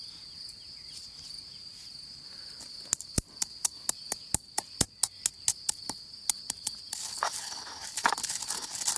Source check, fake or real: real